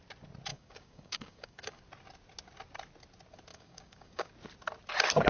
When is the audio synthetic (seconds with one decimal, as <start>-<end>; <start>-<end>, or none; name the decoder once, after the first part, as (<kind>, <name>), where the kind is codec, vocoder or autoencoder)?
0.5-1.8 (codec, DAC); 3.5-4.3